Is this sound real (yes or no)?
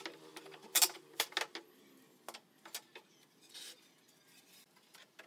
yes